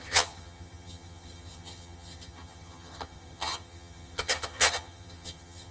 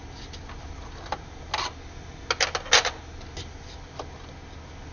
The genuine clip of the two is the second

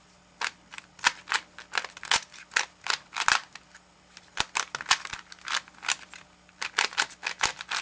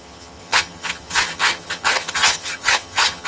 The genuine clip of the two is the first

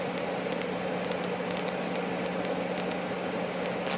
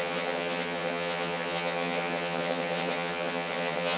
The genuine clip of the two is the first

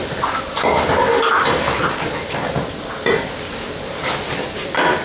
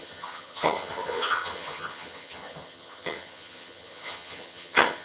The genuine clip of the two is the first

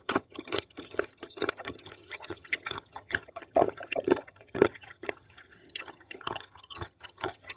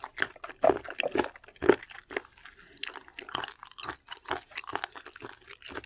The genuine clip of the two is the second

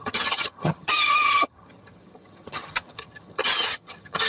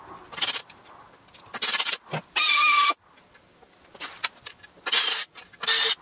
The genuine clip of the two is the second